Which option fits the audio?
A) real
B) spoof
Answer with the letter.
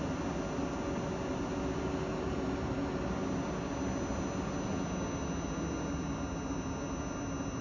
A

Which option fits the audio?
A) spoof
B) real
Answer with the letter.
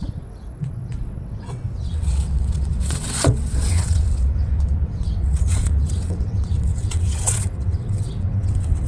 A